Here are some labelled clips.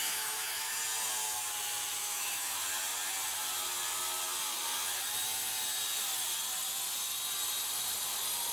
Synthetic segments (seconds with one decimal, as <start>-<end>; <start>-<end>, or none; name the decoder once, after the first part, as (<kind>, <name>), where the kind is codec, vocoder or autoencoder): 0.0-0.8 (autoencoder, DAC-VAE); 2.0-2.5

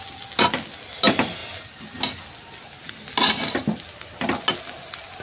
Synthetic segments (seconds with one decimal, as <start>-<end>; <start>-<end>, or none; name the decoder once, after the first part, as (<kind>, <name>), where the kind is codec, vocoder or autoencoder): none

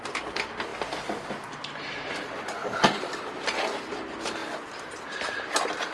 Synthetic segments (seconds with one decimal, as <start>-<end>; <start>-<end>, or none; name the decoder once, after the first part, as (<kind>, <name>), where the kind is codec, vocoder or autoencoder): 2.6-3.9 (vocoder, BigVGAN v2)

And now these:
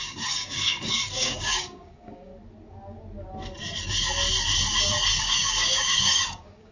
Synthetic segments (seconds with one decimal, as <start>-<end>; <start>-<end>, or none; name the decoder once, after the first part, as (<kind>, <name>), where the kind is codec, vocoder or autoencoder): 0.0-2.3 (codec, DAC); 5.2-6.7

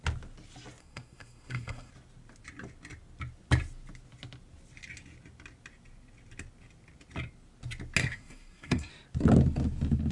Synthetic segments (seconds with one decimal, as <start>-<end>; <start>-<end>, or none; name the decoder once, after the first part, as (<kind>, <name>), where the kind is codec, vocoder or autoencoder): 0.8-1.9 (codec, SNAC); 8.0-8.9